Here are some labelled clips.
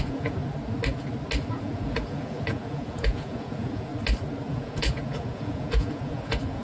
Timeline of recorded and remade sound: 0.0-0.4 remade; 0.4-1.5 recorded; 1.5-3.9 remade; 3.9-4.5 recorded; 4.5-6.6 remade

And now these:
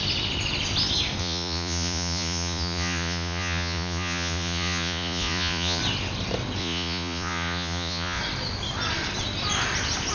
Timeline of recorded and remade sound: 0.0-1.2 recorded; 1.2-5.8 remade; 5.8-6.6 recorded; 6.6-8.2 remade; 8.2-10.1 recorded

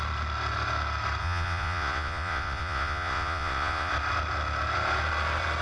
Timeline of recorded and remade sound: 0.0-1.2 recorded; 1.2-3.9 remade; 3.9-5.6 recorded

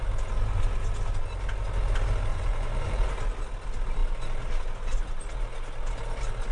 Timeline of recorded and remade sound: 0.0-2.3 recorded; 2.3-2.9 remade; 2.9-6.5 recorded